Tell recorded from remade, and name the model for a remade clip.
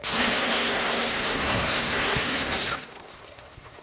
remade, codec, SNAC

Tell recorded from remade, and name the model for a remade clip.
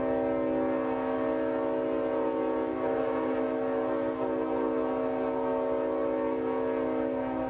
recorded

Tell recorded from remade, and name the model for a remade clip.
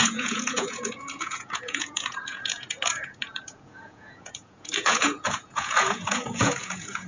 remade, vocoder, Vocos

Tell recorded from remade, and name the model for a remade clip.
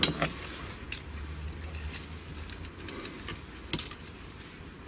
recorded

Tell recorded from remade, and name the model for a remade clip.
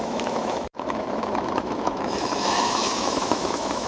remade, autoencoder, DAC-VAE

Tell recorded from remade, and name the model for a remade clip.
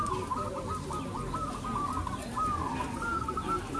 recorded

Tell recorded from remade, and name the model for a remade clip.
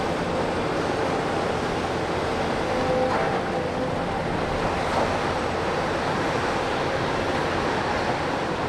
recorded